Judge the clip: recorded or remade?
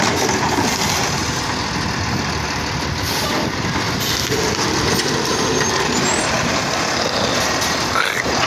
recorded